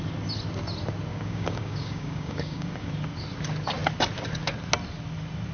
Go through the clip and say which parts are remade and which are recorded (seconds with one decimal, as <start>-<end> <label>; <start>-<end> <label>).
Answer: 0.0-1.1 recorded; 1.1-2.9 remade; 2.9-5.5 recorded